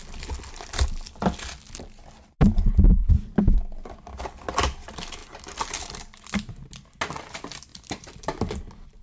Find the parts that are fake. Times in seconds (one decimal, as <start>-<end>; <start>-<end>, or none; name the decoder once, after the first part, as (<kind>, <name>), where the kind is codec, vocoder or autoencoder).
7.7-8.2 (vocoder, BigVGAN v2)